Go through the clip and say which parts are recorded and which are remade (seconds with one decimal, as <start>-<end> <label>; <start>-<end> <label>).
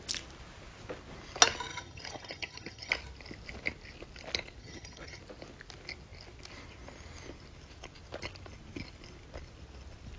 0.0-1.7 recorded; 1.7-2.9 remade; 2.9-4.6 recorded; 4.6-5.2 remade; 5.2-10.2 recorded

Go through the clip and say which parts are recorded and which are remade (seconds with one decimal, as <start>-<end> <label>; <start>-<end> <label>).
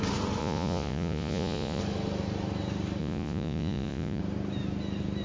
0.0-0.4 recorded; 0.4-1.8 remade; 1.8-3.0 recorded; 3.0-4.2 remade; 4.2-5.2 recorded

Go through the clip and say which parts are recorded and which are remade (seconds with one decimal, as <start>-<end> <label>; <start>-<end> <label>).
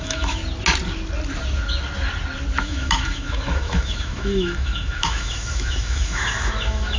0.0-0.4 remade; 0.4-2.6 recorded; 2.6-7.0 remade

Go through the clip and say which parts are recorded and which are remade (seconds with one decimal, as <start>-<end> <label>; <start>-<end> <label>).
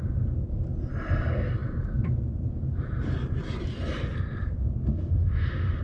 0.0-4.8 recorded; 4.8-5.8 remade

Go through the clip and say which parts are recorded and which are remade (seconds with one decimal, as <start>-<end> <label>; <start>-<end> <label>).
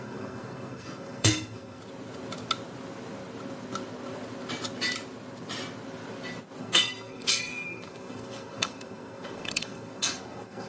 0.0-1.8 remade; 1.8-6.6 recorded; 6.6-10.7 remade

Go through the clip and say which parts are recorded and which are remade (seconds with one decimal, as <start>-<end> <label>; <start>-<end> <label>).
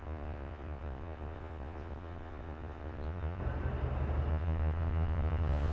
0.0-3.4 remade; 3.4-4.3 recorded; 4.3-5.7 remade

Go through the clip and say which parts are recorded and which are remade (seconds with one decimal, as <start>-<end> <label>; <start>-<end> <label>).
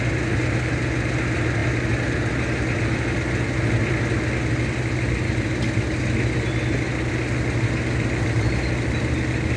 0.0-9.6 recorded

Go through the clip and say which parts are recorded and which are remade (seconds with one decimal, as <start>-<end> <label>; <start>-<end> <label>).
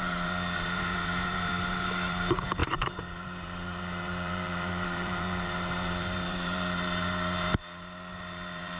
0.0-8.8 remade